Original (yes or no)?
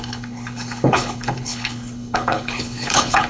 no